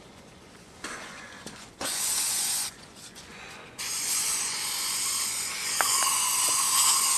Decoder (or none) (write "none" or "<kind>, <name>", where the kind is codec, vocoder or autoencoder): vocoder, Vocos